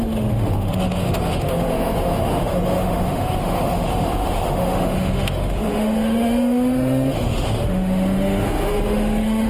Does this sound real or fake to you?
fake